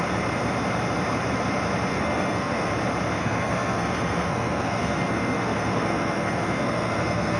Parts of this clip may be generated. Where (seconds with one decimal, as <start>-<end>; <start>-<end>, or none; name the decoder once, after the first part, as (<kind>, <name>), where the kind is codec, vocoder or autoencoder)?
1.9-2.7 (codec, SNAC); 3.2-7.4